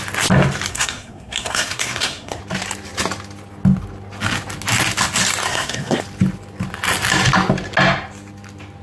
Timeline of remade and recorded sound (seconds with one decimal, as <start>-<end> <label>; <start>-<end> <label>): 0.0-0.7 recorded; 0.7-2.4 remade; 2.4-5.5 recorded; 5.5-6.0 remade; 6.0-8.8 recorded